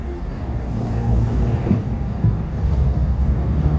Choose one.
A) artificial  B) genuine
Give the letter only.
A